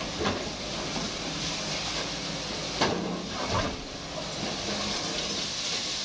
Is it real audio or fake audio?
real